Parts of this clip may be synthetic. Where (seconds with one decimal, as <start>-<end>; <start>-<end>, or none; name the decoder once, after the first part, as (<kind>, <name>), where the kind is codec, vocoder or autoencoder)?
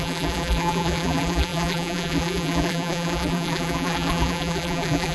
0.0-5.1 (vocoder, BigVGAN v2)